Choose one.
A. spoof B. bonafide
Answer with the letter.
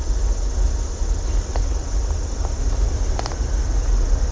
B